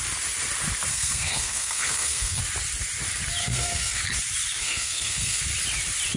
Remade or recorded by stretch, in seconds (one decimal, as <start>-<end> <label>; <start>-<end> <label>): 0.0-0.9 recorded; 0.9-2.4 remade; 2.4-3.4 recorded; 3.4-4.0 remade; 4.0-4.6 recorded; 4.6-5.4 remade; 5.4-6.2 recorded